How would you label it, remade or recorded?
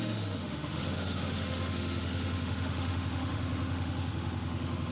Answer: remade